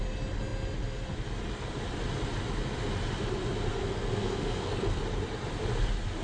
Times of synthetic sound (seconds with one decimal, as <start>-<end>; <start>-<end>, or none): 3.7-5.0